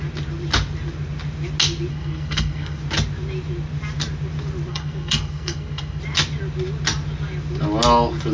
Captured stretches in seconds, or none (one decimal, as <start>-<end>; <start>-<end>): 0.0-1.9; 2.8-4.7; 6.0-8.3